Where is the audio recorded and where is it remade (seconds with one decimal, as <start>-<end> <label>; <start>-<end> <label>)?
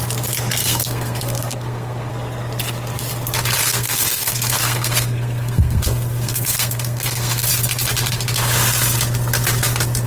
0.0-0.6 recorded; 0.6-2.1 remade; 2.1-3.6 recorded; 3.6-7.5 remade; 7.5-10.1 recorded